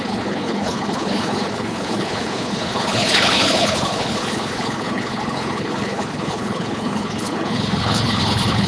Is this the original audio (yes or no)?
no